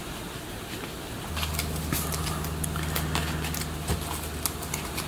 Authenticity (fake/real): real